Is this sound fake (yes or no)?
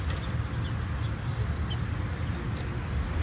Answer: no